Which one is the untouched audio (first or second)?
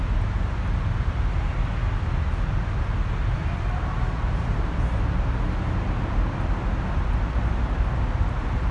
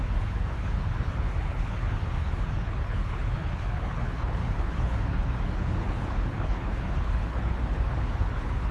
first